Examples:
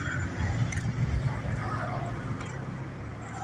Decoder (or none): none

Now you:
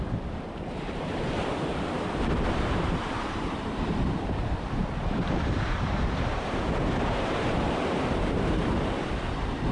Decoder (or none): vocoder, BigVGAN v2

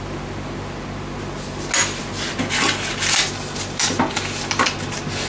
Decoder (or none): none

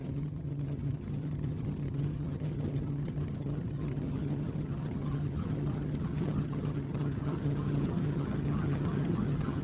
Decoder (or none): vocoder, HiFi-GAN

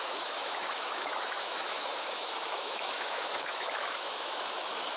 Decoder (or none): autoencoder, DAC-VAE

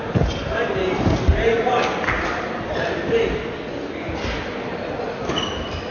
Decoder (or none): none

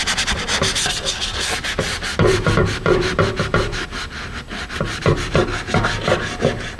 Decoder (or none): none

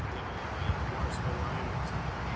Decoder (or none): none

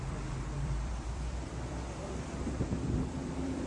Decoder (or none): vocoder, BigVGAN v2